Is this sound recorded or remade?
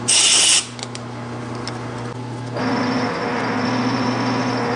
recorded